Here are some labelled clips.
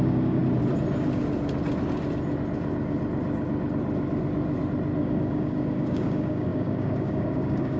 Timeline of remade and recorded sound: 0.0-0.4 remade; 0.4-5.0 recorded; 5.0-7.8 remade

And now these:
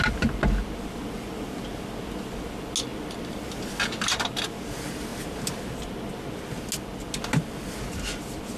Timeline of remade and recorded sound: 0.0-8.6 recorded

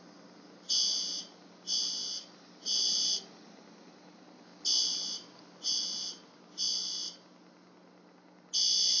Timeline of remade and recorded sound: 0.0-9.0 recorded

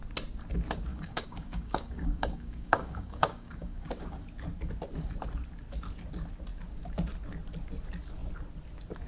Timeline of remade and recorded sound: 0.0-0.9 recorded; 0.9-4.1 remade; 4.1-9.1 recorded

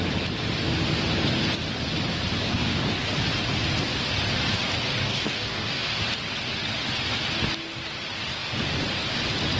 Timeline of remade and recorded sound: 0.0-2.4 recorded; 2.4-3.1 remade; 3.1-5.0 recorded; 5.0-6.0 remade; 6.0-9.6 recorded

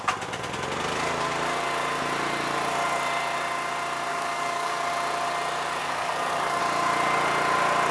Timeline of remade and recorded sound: 0.0-4.1 recorded; 4.1-4.9 remade; 4.9-5.8 recorded; 5.8-6.6 remade; 6.6-7.9 recorded